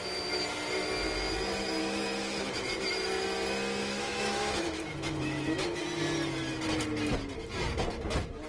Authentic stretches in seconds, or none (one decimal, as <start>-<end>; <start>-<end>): 0.0-1.8; 2.8-3.8; 5.8-8.5